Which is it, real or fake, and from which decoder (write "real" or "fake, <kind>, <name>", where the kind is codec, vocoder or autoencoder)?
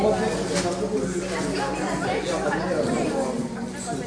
real